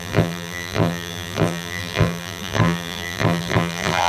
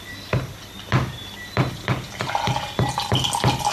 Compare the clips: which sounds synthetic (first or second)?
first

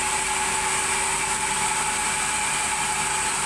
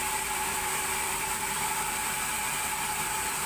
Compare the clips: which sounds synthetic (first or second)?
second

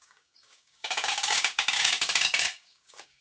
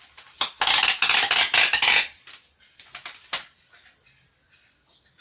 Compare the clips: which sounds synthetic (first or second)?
first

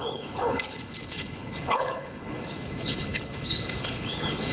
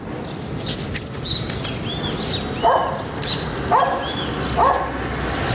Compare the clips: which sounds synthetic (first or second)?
first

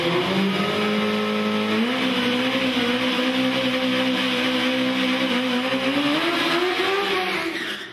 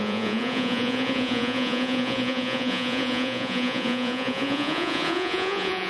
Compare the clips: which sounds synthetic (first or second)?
second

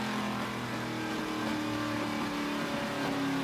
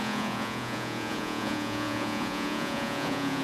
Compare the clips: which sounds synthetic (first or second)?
second